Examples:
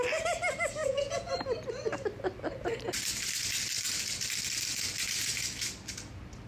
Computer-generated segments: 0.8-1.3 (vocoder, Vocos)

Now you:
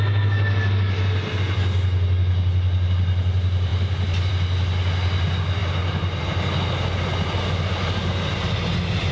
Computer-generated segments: none

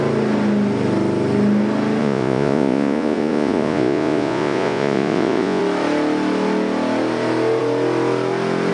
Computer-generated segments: 2.0-5.6 (vocoder, Vocos)

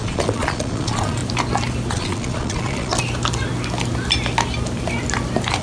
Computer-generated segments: 0.0-1.2 (vocoder, Vocos); 1.9-2.9